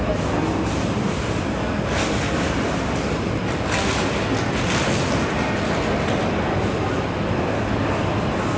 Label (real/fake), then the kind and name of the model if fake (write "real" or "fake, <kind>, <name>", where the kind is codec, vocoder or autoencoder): real